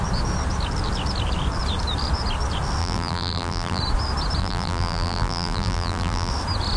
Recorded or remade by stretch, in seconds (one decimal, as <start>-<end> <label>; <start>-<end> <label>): 0.0-2.8 recorded; 2.8-3.8 remade; 3.8-4.4 recorded; 4.4-6.3 remade; 6.3-6.8 recorded